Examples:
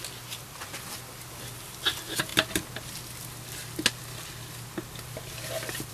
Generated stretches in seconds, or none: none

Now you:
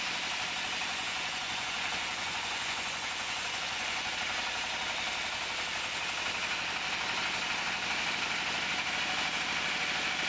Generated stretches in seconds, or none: 0.9-4.1 (vocoder, Vocos)